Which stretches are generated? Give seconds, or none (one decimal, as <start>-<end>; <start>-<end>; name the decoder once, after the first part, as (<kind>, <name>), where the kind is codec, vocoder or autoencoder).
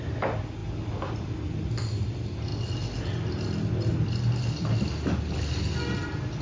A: none